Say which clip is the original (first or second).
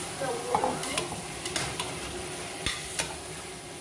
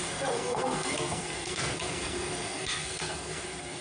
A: first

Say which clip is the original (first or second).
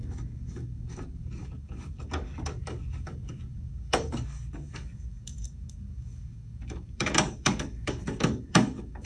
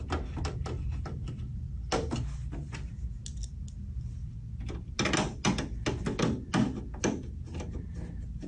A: second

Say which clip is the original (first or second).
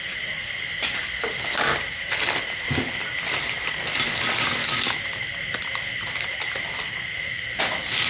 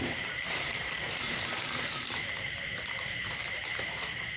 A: first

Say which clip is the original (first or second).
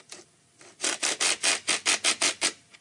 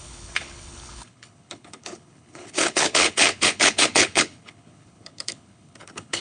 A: first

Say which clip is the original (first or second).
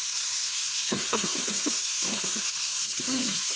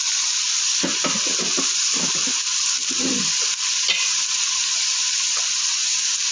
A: second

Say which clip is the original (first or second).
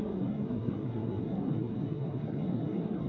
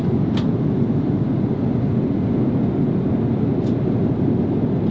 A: second